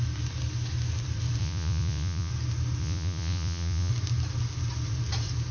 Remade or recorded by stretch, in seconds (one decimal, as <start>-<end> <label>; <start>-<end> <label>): 0.0-1.4 recorded; 1.4-2.3 remade; 2.3-2.8 recorded; 2.8-3.9 remade; 3.9-5.5 recorded